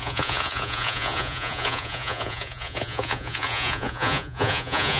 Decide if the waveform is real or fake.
fake